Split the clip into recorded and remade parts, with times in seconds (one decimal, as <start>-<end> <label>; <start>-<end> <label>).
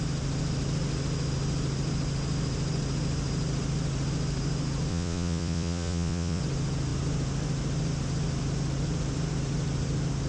0.0-4.9 recorded; 4.9-6.4 remade; 6.4-10.3 recorded